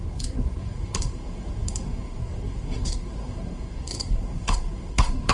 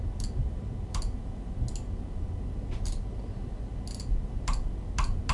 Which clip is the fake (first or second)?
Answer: first